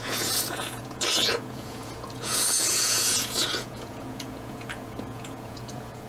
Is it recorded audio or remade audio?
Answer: remade